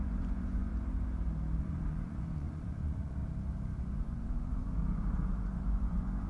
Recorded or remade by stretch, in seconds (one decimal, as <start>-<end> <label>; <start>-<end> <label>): 0.0-0.7 remade; 0.7-1.6 recorded; 1.6-3.2 remade; 3.2-3.8 recorded; 3.8-6.3 remade